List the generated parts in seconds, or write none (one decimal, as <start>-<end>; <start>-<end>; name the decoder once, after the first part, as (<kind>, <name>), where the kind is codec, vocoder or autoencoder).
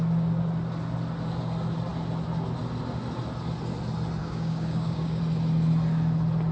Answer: 4.2-5.2 (codec, DAC)